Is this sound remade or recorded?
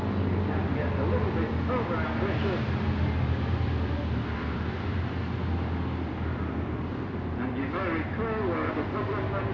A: recorded